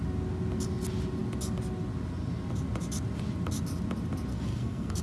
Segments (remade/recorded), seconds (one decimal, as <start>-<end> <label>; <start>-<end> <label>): 0.0-4.3 recorded; 4.3-5.0 remade